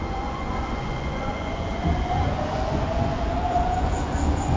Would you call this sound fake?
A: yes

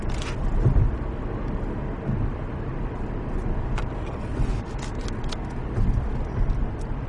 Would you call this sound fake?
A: no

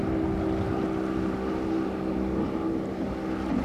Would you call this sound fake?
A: no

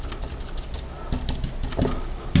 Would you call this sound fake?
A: no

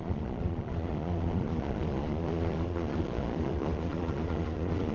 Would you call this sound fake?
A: yes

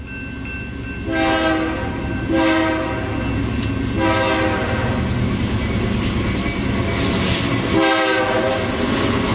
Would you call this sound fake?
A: no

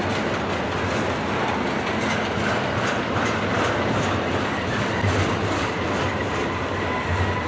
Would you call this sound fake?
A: no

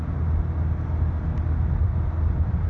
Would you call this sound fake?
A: no